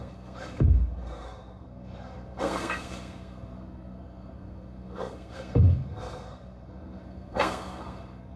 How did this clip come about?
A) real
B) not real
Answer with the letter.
B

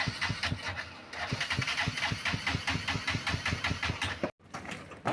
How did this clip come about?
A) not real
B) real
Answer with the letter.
B